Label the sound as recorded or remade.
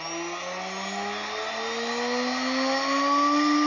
recorded